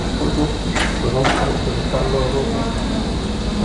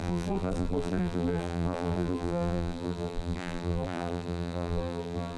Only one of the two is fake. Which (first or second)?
second